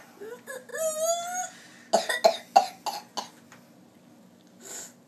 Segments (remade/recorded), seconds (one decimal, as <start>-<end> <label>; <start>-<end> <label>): 0.0-5.1 recorded